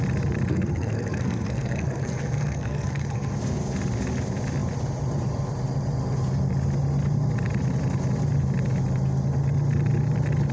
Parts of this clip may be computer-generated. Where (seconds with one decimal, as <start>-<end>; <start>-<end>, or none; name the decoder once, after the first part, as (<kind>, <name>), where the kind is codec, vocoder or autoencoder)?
0.5-3.3 (codec, SNAC)